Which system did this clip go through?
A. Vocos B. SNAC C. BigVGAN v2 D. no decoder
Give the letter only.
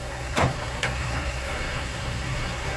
B